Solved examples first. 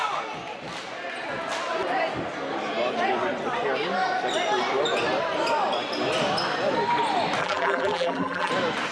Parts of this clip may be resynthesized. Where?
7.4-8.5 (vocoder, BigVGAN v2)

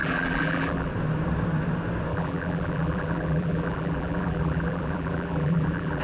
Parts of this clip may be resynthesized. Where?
0.0-0.9 (vocoder, BigVGAN v2); 2.1-6.0

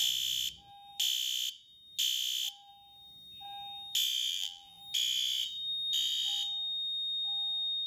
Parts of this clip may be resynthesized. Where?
4.3-4.8 (vocoder, BigVGAN v2)